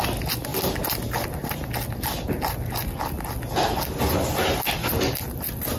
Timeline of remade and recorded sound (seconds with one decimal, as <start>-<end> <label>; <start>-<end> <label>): 0.0-5.8 recorded